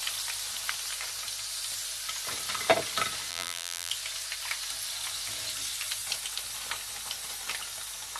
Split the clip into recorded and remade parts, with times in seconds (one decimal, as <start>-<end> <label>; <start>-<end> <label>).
0.0-3.3 recorded; 3.3-3.9 remade; 3.9-8.2 recorded